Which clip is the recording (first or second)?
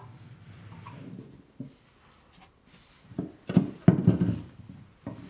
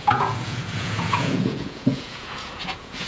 first